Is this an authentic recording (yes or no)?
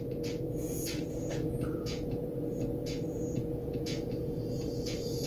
no